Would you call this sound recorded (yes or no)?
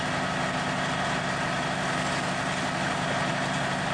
yes